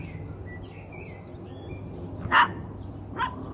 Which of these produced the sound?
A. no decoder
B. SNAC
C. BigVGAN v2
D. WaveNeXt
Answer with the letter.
A